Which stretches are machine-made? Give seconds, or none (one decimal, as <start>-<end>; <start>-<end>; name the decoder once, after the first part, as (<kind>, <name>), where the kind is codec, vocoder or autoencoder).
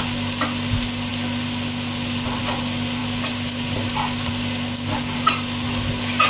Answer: none